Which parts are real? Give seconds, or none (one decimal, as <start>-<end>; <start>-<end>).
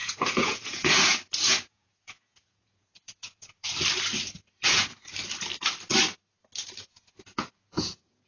3.7-4.5; 5.0-6.8